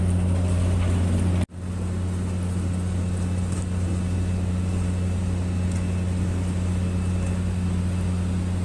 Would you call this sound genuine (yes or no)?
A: yes